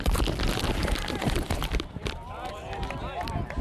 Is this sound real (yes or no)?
no